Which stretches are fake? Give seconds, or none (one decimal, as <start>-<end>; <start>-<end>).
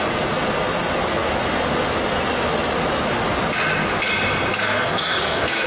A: 4.5-5.7